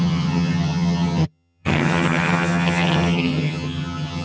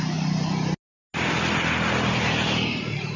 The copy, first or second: first